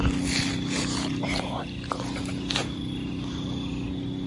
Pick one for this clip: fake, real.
real